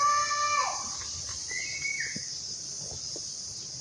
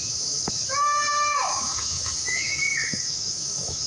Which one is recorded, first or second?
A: first